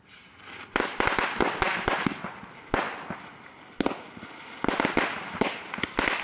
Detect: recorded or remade recorded